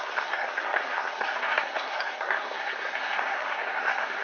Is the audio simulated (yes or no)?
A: yes